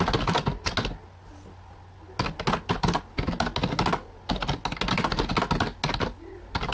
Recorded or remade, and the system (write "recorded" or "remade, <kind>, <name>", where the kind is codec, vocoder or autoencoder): recorded